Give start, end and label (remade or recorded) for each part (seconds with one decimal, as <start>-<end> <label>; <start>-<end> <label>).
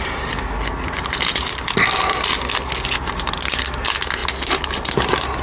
0.0-5.4 recorded